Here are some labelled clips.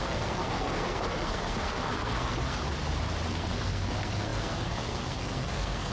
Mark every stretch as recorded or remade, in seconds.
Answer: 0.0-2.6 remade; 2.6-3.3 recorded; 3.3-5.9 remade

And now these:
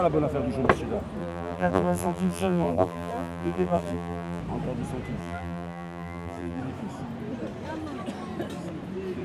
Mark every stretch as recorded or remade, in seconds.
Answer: 0.0-1.2 recorded; 1.2-4.4 remade; 4.4-5.2 recorded; 5.2-6.6 remade; 6.6-9.2 recorded

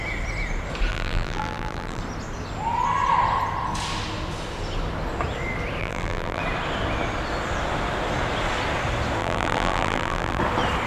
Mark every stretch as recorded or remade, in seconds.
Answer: 0.0-0.9 recorded; 0.9-2.0 remade; 2.0-5.8 recorded; 5.8-6.4 remade; 6.4-9.2 recorded; 9.2-10.4 remade; 10.4-10.9 recorded

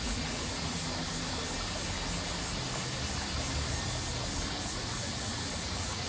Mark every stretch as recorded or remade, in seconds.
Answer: 0.0-0.8 remade; 0.8-4.5 recorded; 4.5-6.1 remade

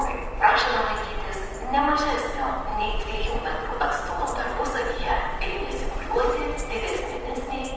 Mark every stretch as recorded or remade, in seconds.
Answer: 0.0-2.7 recorded; 2.7-7.8 remade